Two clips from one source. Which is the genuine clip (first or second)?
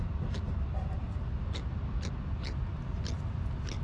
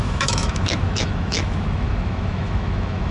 first